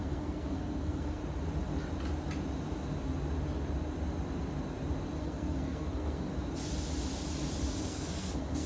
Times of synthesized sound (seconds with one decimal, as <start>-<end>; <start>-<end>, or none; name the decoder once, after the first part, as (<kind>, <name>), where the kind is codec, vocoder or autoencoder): 0.0-1.2 (codec, SNAC); 5.2-6.3; 7.8-8.7